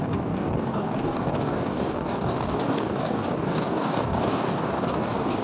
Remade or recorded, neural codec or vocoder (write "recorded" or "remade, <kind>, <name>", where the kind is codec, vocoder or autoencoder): remade, codec, DAC